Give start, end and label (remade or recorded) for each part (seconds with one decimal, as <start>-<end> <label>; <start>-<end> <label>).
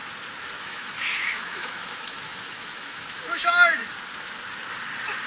0.0-0.6 recorded; 0.6-3.8 remade; 3.8-5.3 recorded